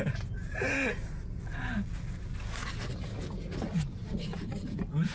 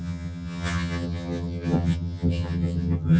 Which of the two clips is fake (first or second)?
second